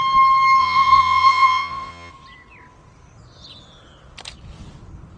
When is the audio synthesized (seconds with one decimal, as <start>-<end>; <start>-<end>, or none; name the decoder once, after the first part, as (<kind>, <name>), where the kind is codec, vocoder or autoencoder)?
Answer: 0.6-2.1 (vocoder, Vocos)